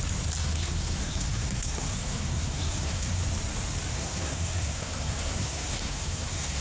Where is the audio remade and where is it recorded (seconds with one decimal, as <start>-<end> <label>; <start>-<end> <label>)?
0.0-0.4 recorded; 0.4-3.2 remade; 3.2-3.9 recorded; 3.9-6.6 remade